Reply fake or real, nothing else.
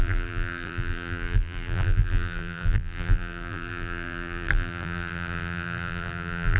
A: fake